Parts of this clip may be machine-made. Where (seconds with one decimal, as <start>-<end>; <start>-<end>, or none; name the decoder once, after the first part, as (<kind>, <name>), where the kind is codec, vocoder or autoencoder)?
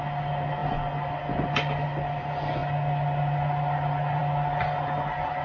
none